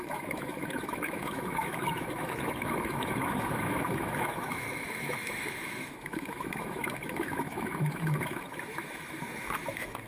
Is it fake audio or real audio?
fake